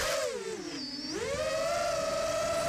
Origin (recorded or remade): recorded